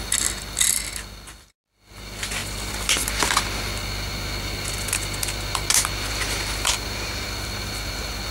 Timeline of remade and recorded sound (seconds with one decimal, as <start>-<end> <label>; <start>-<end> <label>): 0.0-8.3 recorded

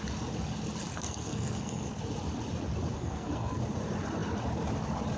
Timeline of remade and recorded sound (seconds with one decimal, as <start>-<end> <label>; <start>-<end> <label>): 0.0-0.9 recorded; 0.9-2.0 remade; 2.0-2.9 recorded; 2.9-3.6 remade; 3.6-5.2 recorded

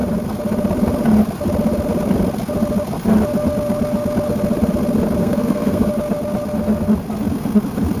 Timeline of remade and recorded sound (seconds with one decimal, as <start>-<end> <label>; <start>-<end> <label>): 0.0-5.2 recorded; 5.2-5.9 remade; 5.9-8.0 recorded

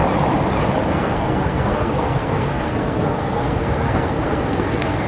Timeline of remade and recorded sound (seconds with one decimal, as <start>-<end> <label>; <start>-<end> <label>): 0.0-0.9 recorded; 0.9-5.1 remade

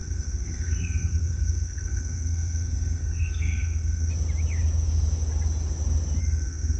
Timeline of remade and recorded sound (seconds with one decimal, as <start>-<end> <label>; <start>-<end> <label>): 0.0-4.1 remade; 4.1-6.2 recorded; 6.2-6.8 remade

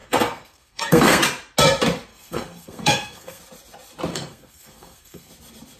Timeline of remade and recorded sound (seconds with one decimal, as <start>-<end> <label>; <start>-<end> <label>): 0.0-1.2 remade; 1.2-2.1 recorded; 2.1-3.4 remade; 3.4-4.1 recorded; 4.1-5.3 remade; 5.3-5.8 recorded

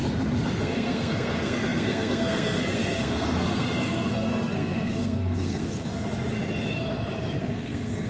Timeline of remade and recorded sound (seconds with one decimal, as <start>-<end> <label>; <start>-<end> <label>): 0.0-0.6 recorded; 0.6-5.9 remade; 5.9-7.4 recorded; 7.4-8.1 remade

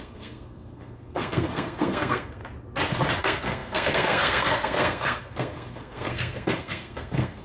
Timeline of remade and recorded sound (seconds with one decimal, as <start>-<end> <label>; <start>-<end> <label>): 0.0-2.4 remade; 2.4-3.2 recorded; 3.2-7.4 remade